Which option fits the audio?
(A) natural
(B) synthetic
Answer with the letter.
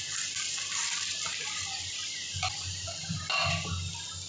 A